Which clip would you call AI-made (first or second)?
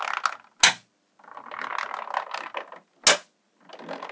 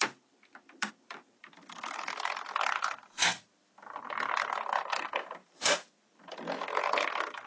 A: second